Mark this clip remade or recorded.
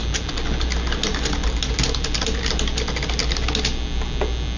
recorded